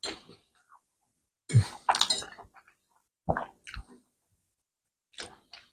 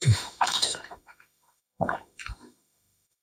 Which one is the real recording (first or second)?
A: first